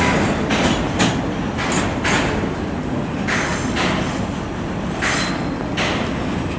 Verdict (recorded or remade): recorded